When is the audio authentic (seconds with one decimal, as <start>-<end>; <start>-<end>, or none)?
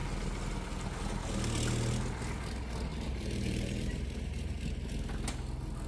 0.0-2.9; 4.6-5.9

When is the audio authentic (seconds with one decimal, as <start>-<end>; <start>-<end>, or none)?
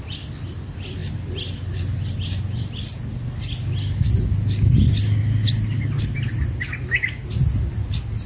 0.0-8.3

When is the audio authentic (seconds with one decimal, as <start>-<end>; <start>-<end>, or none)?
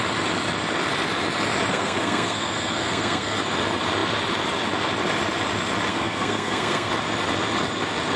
0.0-1.7; 3.4-5.9; 6.9-8.2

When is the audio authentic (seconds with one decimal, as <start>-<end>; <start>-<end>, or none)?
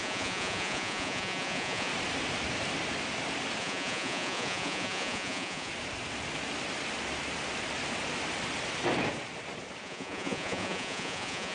1.9-3.6; 5.7-9.8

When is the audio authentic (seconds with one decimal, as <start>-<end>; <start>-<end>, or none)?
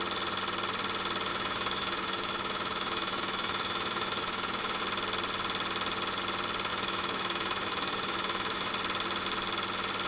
0.0-1.3; 4.8-6.7; 8.7-10.1